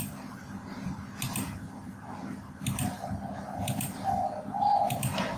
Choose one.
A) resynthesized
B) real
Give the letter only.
B